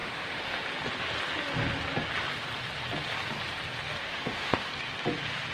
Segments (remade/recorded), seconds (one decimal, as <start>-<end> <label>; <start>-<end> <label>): 0.0-0.7 remade; 0.7-4.0 recorded; 4.0-4.7 remade; 4.7-5.5 recorded